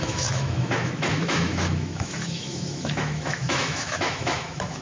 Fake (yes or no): yes